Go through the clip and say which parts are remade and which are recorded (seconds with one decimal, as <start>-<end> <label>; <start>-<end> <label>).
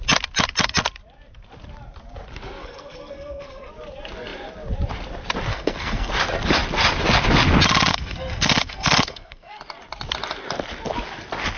0.0-2.6 recorded; 2.6-3.7 remade; 3.7-5.5 recorded; 5.5-6.1 remade; 6.1-7.9 recorded; 7.9-9.6 remade; 9.6-11.6 recorded